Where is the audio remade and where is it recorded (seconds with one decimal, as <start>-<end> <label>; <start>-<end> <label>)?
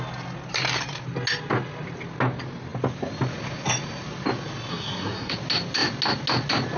0.0-4.7 recorded; 4.7-5.3 remade; 5.3-6.8 recorded